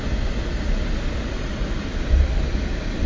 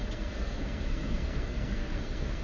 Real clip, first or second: first